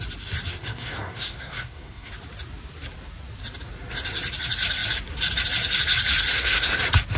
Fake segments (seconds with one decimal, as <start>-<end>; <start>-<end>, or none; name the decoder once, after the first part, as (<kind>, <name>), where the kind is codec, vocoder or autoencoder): 0.5-2.1 (codec, SNAC); 6.3-6.8